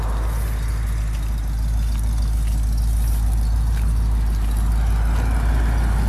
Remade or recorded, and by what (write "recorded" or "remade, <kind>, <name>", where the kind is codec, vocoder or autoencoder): recorded